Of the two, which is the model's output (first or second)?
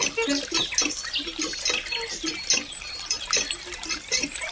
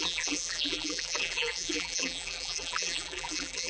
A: second